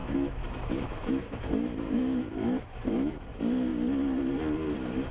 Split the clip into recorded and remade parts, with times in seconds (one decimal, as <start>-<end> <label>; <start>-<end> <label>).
0.0-3.1 remade; 3.1-5.1 recorded

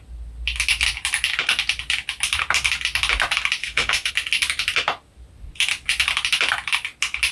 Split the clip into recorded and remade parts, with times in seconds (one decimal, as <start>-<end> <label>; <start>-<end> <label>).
0.0-3.6 recorded; 3.6-4.1 remade; 4.1-7.3 recorded

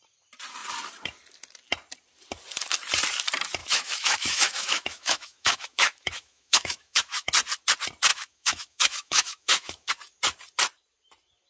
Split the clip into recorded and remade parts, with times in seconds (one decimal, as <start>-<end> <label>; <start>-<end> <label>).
0.0-3.6 recorded; 3.6-7.3 remade; 7.3-8.1 recorded; 8.1-9.9 remade; 9.9-11.5 recorded

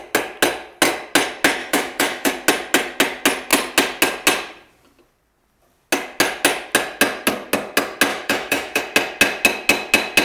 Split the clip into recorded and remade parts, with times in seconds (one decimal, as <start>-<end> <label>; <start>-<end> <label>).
0.0-1.6 recorded; 1.6-2.3 remade; 2.3-8.1 recorded; 8.1-8.8 remade; 8.8-10.2 recorded

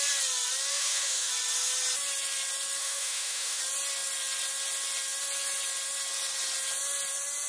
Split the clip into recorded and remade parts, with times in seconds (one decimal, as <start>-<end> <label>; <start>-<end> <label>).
0.0-0.7 recorded; 0.7-1.3 remade; 1.3-2.8 recorded; 2.8-3.6 remade; 3.6-7.5 recorded